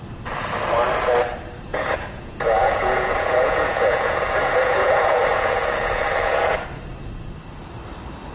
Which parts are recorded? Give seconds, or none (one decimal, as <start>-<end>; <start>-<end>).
0.0-1.7; 6.6-8.3